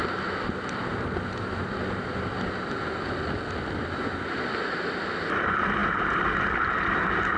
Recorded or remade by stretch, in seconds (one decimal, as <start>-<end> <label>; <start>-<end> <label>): 0.0-7.4 recorded